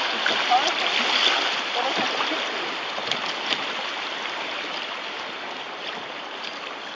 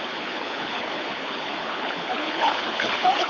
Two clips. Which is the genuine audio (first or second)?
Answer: first